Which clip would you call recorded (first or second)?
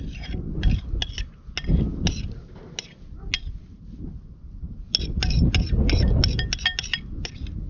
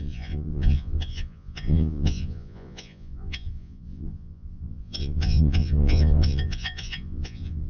first